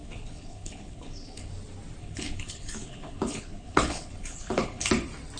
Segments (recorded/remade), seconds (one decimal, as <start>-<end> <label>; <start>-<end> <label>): 0.0-1.5 remade; 1.5-2.0 recorded; 2.0-4.9 remade; 4.9-5.4 recorded